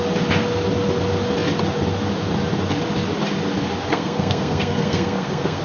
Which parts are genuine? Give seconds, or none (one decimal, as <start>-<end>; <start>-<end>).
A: 0.0-3.9

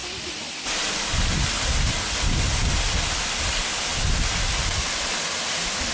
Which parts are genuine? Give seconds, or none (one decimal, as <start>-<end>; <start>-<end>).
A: 0.0-5.9

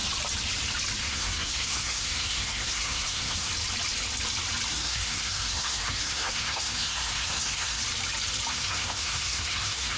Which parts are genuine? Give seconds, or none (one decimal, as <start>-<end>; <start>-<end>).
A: 0.0-1.0; 3.5-4.7; 7.8-8.5

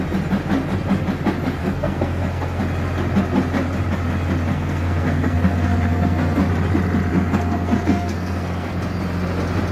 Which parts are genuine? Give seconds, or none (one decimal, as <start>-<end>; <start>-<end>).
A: 0.0-1.6; 2.6-4.5; 6.4-7.1; 8.7-9.7

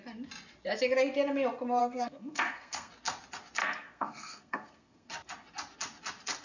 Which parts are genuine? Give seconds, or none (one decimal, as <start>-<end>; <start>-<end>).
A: 0.0-1.8; 2.9-3.6; 5.1-6.4